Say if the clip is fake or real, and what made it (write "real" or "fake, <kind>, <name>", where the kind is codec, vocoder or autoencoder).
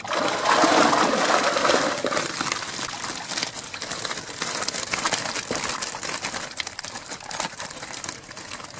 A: real